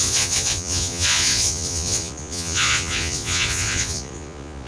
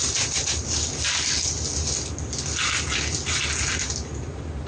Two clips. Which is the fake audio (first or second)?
first